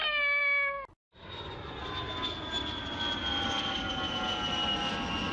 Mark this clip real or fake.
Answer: real